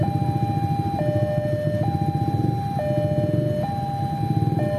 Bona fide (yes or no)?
yes